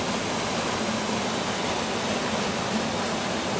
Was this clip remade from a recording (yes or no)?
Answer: no